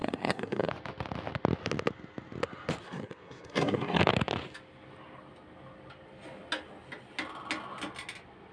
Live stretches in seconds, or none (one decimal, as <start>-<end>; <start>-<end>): 0.7-2.8; 4.0-8.5